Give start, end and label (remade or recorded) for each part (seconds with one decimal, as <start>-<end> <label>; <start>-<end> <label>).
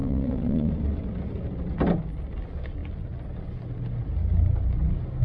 0.0-0.7 remade; 0.7-5.2 recorded